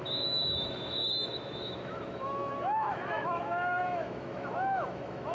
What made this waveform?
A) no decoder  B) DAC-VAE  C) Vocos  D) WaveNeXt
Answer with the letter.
B